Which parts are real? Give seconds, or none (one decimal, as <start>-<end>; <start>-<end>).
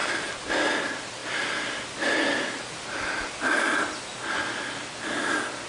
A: 0.0-5.7